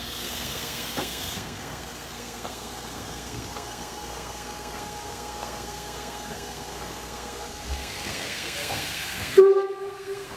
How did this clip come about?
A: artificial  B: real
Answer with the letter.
A